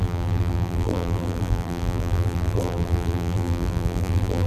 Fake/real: fake